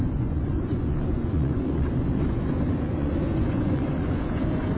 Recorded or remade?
remade